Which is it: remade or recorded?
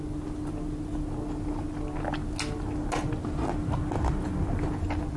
recorded